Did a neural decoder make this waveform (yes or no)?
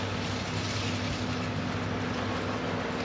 no